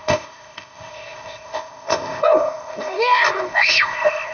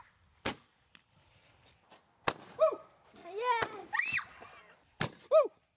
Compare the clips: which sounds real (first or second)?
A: second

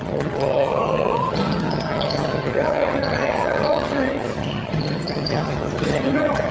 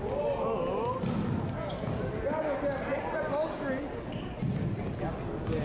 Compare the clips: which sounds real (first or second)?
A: second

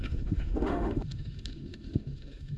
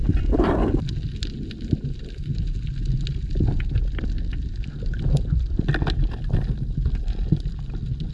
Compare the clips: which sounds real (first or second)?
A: second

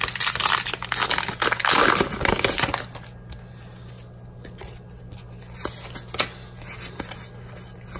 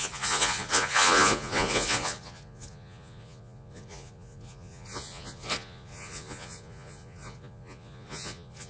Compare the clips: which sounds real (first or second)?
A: first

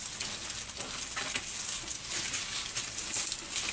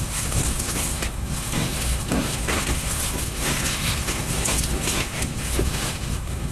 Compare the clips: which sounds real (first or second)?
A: first